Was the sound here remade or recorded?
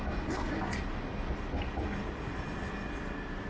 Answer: recorded